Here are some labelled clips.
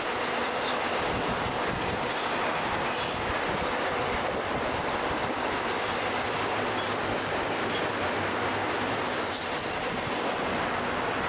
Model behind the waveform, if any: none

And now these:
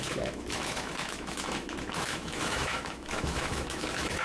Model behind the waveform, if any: autoencoder, DAC-VAE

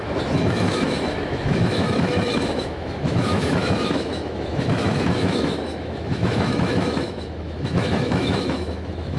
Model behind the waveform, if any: autoencoder, DAC-VAE